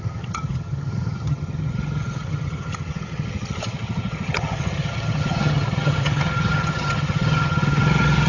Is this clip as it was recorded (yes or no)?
no